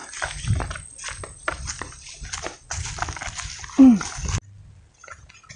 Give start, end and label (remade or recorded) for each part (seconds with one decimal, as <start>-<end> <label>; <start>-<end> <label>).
0.0-5.6 recorded